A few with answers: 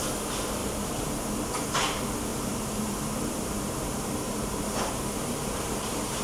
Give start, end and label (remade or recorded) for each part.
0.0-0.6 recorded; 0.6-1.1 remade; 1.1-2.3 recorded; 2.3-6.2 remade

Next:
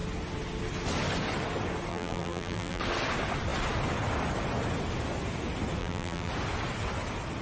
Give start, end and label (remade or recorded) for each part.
0.0-1.9 recorded; 1.9-2.8 remade; 2.8-5.8 recorded; 5.8-6.3 remade; 6.3-7.4 recorded